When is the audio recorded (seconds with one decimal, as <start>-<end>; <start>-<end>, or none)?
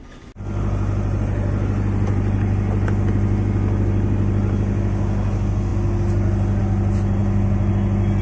0.0-8.2